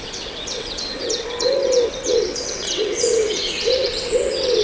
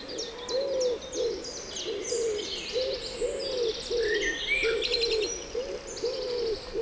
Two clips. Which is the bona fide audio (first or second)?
second